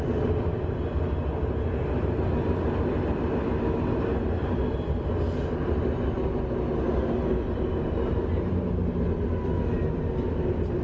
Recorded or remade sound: recorded